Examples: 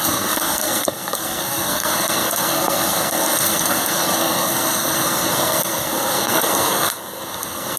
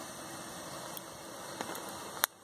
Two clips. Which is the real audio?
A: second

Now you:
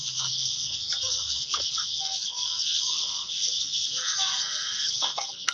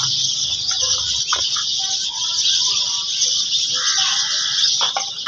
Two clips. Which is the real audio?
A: second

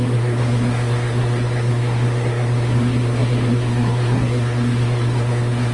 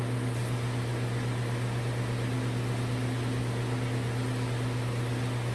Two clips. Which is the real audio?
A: second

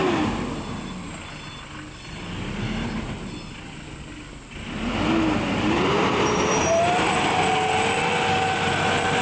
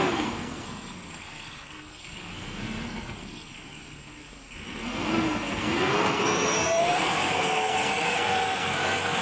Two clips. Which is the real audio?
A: first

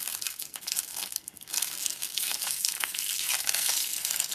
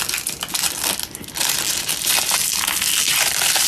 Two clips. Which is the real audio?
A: second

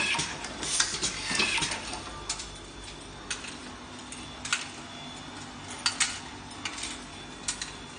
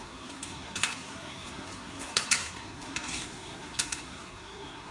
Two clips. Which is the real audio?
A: first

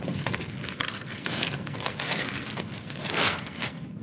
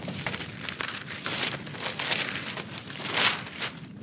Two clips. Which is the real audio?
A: second